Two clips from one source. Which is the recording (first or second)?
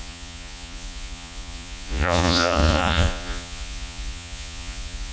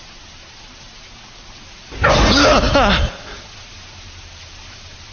second